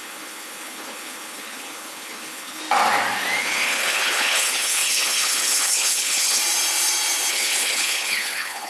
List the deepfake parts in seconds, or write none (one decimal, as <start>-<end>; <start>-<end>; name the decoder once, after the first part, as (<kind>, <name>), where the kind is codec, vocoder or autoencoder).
0.0-2.6 (codec, HILCodec); 3.4-6.4; 7.3-8.7